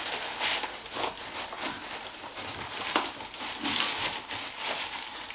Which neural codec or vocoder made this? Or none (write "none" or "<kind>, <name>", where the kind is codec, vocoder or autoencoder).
none